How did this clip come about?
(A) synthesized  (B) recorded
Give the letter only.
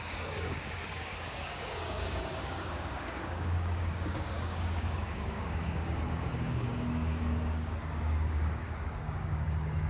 A